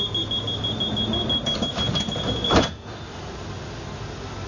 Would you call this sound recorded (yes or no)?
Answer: yes